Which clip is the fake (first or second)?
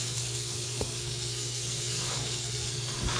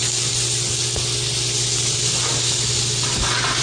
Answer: first